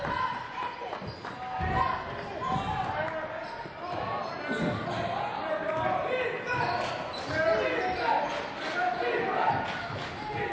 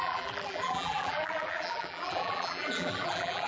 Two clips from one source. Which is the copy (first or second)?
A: second